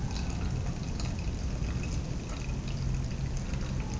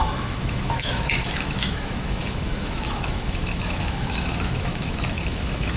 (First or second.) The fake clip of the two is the second